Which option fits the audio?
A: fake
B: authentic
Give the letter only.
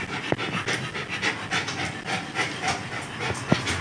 B